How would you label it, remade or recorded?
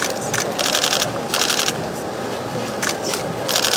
recorded